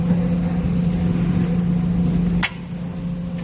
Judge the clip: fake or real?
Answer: real